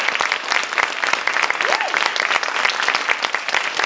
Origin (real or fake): real